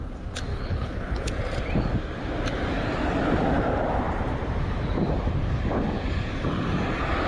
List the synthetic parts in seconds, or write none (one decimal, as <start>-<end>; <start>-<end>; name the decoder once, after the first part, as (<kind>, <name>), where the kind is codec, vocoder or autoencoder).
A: 0.5-1.3 (codec, HILCodec)